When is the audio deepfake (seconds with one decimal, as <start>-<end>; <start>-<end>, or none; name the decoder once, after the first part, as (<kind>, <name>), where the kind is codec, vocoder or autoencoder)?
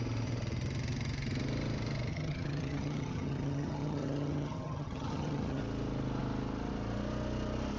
2.1-5.6 (vocoder, HiFi-GAN)